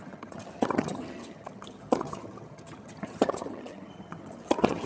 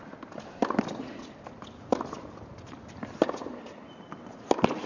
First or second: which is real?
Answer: second